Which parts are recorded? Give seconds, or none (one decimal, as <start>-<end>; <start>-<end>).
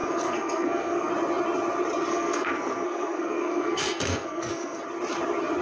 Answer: 1.1-2.1; 4.8-5.6